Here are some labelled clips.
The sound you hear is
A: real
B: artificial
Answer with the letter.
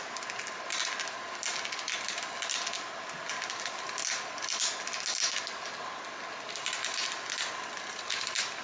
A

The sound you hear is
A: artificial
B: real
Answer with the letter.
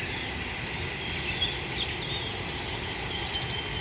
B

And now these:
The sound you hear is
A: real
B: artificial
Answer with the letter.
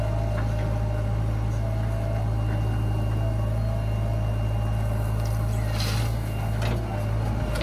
A